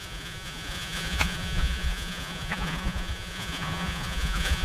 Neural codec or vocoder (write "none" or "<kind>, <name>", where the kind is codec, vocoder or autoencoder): vocoder, Vocos